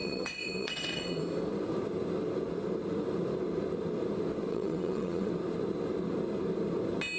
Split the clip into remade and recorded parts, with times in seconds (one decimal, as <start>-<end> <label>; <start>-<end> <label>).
0.0-1.2 remade; 1.2-4.5 recorded; 4.5-5.3 remade; 5.3-7.2 recorded